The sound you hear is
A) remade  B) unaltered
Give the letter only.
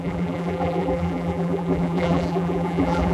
A